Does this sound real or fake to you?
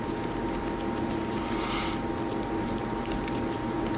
real